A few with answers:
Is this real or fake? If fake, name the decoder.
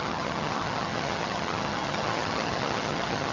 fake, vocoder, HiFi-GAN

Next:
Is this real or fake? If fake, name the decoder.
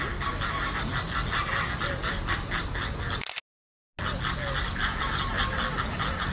real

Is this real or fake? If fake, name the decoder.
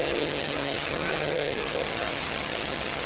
fake, vocoder, HiFi-GAN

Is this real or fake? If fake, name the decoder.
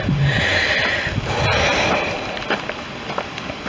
real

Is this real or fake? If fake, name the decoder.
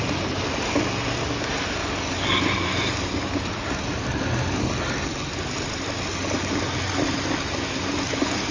real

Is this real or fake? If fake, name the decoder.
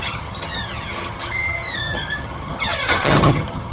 fake, vocoder, HiFi-GAN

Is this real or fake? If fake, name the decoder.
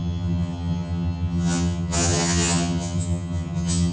fake, vocoder, HiFi-GAN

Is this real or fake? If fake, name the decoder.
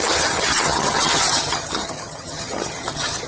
fake, vocoder, HiFi-GAN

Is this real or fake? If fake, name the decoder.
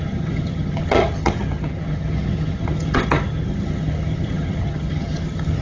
fake, vocoder, HiFi-GAN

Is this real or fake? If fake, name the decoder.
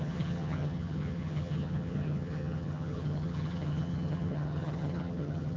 fake, vocoder, HiFi-GAN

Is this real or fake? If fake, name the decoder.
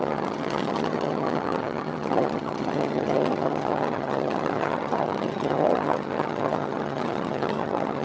fake, vocoder, HiFi-GAN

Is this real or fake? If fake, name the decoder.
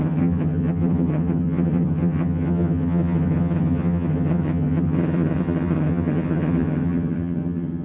fake, vocoder, HiFi-GAN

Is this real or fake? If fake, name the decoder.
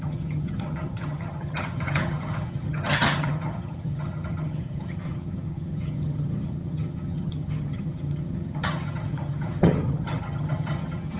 fake, vocoder, HiFi-GAN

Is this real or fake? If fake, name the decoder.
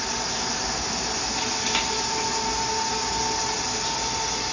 real